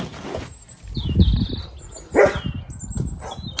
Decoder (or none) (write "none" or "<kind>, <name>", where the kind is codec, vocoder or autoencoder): none